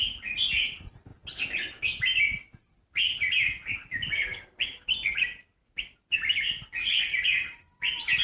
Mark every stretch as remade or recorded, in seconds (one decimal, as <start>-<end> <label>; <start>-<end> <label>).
0.0-8.2 recorded